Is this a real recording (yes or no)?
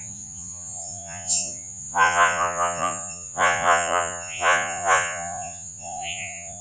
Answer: no